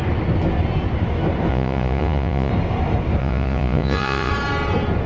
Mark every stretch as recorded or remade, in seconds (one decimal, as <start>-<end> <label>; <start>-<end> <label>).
0.0-1.5 recorded; 1.5-2.5 remade; 2.5-3.2 recorded; 3.2-4.3 remade; 4.3-5.1 recorded